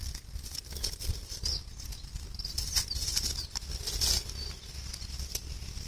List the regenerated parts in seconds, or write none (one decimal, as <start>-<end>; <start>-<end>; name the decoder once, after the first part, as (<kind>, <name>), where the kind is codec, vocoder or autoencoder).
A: none